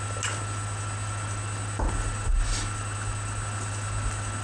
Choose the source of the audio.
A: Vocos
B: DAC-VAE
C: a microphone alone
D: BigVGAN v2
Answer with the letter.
C